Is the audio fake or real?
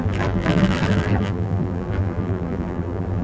fake